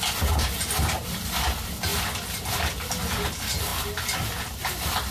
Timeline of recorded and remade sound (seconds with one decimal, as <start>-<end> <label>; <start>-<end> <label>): 0.0-5.1 recorded